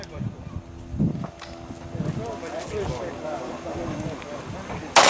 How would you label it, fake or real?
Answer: real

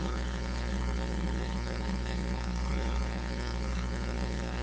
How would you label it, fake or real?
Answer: fake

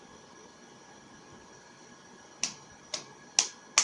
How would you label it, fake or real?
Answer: real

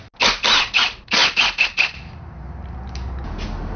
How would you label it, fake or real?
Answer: real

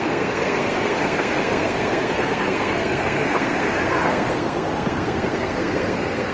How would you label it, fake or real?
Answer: fake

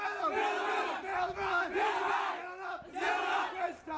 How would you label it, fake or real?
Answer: real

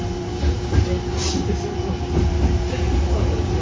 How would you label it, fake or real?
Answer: real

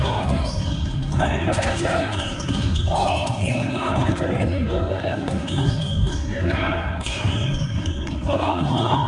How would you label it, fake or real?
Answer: fake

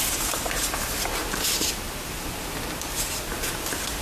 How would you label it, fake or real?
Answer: real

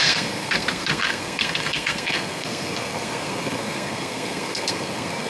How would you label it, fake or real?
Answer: fake